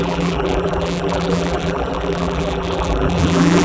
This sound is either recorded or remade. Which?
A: remade